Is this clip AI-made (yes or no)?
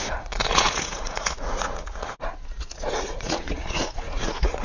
yes